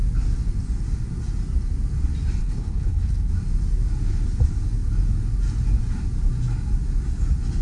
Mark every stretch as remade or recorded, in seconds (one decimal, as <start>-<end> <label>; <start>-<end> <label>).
0.0-2.4 recorded; 2.4-3.3 remade; 3.3-7.6 recorded